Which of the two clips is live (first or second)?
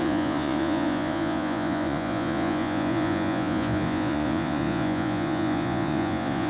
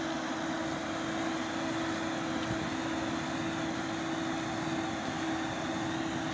second